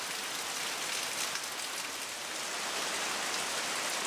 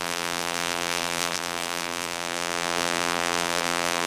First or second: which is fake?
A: second